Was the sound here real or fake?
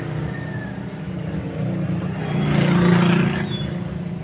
real